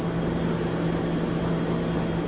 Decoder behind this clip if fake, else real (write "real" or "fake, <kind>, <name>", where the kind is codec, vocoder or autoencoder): real